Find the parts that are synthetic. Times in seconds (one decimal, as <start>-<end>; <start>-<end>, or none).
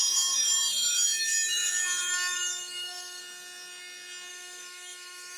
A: 0.0-3.2; 4.3-5.4